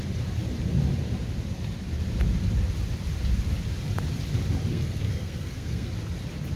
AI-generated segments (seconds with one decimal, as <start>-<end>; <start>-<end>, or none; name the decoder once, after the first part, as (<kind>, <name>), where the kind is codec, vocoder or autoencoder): 4.7-5.9 (codec, SNAC)